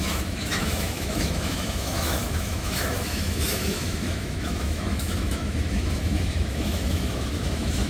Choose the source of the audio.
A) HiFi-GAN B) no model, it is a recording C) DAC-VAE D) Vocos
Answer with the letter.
C